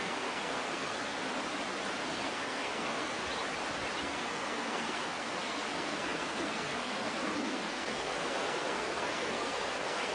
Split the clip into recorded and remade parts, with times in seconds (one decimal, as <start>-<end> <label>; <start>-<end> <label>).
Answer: 0.0-1.2 remade; 1.2-2.1 recorded; 2.1-3.2 remade; 3.2-4.0 recorded; 4.0-10.1 remade